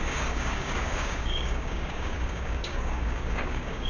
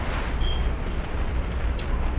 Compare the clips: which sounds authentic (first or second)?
second